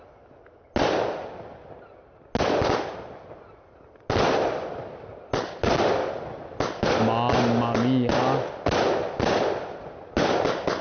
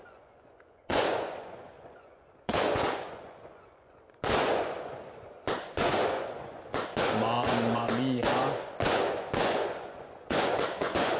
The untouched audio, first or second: first